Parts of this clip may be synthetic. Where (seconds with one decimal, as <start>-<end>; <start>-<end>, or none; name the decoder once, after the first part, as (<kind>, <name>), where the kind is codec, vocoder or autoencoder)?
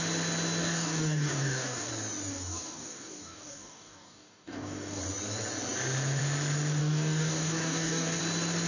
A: 0.6-1.9 (codec, DAC); 2.3-5.0; 6.8-8.2